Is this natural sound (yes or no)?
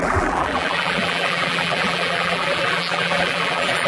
no